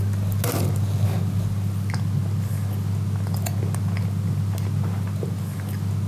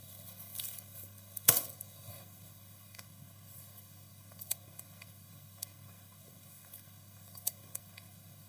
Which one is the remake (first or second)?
second